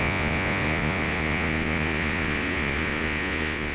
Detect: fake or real fake